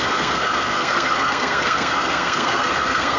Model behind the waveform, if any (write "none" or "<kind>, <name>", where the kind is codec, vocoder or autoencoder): codec, SNAC